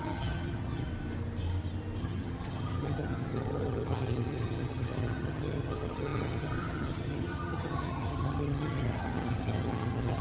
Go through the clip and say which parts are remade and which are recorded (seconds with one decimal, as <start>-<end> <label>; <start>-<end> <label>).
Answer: 0.0-0.9 remade; 0.9-2.0 recorded; 2.0-10.2 remade